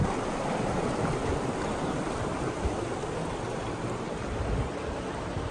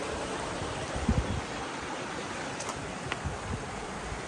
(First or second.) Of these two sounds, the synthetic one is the second